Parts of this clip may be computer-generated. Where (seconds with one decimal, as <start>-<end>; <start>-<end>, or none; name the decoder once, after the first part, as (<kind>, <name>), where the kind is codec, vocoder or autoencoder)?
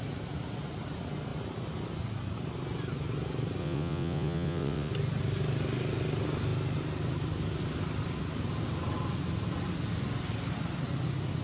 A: 3.6-4.9 (vocoder, WaveNeXt)